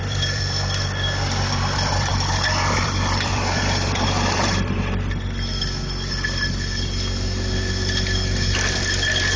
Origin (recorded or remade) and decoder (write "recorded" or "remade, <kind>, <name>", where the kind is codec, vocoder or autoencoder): remade, vocoder, BigVGAN v2